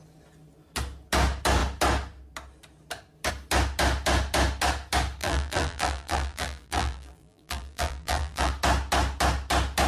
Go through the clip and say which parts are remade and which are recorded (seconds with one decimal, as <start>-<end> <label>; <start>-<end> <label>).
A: 0.0-5.2 recorded; 5.2-8.5 remade; 8.5-9.9 recorded